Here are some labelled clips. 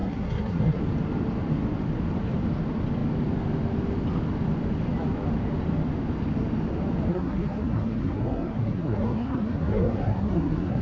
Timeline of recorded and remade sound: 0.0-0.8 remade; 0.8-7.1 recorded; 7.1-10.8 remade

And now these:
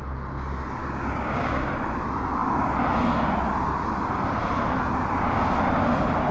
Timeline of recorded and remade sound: 0.0-0.8 recorded; 0.8-1.7 remade; 1.7-6.3 recorded

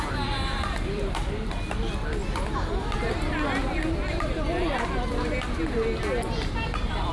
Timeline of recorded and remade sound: 0.0-7.1 recorded